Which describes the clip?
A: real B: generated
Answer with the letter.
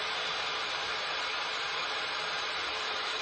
B